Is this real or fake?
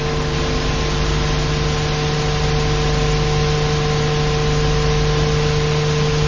real